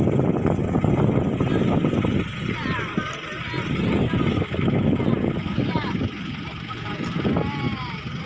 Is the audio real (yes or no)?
yes